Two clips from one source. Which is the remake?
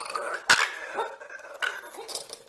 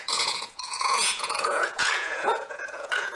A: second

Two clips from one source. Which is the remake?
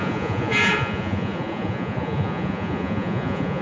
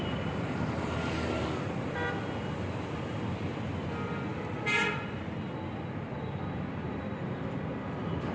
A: first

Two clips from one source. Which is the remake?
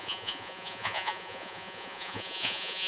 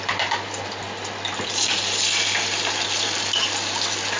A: first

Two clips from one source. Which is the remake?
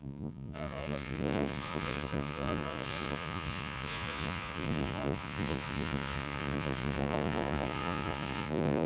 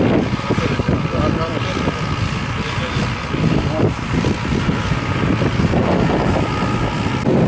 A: first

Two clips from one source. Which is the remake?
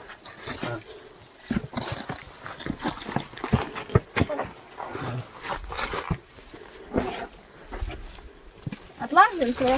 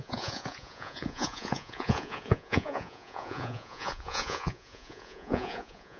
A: second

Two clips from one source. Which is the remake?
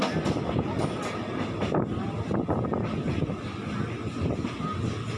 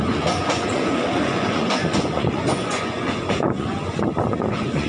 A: second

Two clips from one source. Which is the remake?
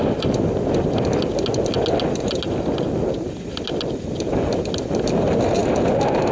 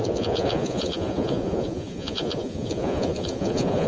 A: second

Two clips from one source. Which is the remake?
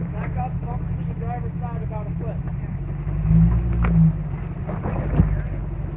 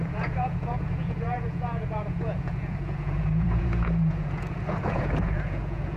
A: second